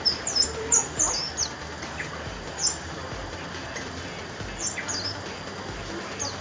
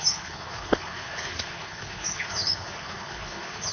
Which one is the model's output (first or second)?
second